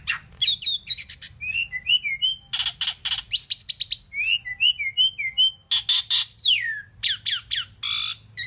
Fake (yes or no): no